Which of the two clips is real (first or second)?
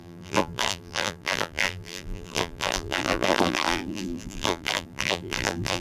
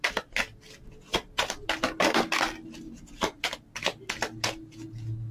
second